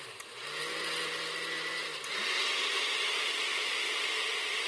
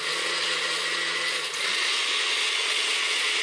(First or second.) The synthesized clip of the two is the second